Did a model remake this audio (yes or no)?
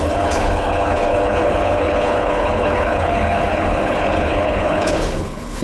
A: yes